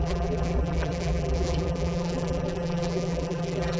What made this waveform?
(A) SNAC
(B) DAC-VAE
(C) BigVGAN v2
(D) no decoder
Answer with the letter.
C